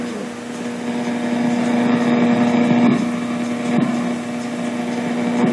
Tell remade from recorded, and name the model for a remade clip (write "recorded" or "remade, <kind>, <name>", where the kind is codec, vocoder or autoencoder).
recorded